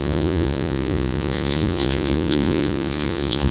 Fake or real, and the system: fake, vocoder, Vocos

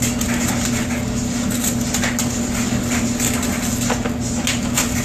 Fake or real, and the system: real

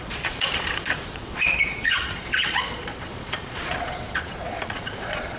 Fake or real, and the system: fake, vocoder, Vocos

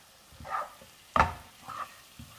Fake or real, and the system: real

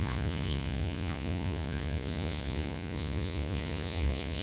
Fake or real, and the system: fake, vocoder, Vocos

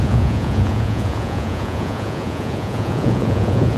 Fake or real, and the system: fake, vocoder, Vocos